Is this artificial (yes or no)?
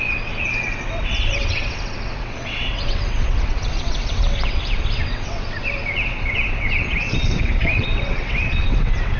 yes